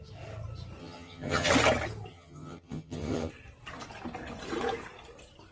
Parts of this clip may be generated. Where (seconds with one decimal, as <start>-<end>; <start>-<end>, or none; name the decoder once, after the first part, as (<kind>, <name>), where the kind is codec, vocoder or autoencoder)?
0.8-1.5 (vocoder, HiFi-GAN); 2.1-3.3